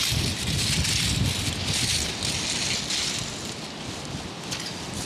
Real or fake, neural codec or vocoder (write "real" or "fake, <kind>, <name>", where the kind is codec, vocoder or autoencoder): real